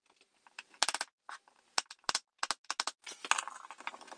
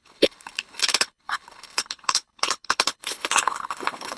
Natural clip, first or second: first